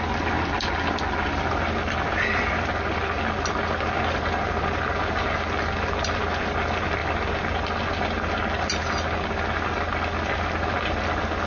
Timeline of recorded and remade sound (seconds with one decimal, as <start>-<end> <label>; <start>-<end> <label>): 0.0-11.5 recorded